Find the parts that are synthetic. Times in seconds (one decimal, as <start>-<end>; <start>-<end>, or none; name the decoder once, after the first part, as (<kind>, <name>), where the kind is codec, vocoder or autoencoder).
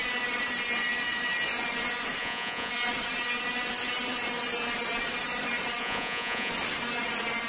2.2-2.7 (vocoder, Vocos); 5.8-6.5